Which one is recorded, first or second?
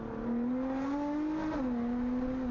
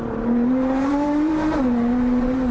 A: first